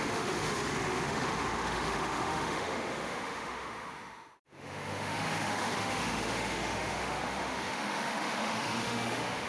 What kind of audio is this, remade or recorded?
remade